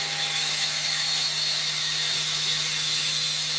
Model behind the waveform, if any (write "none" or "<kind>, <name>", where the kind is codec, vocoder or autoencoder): autoencoder, DAC-VAE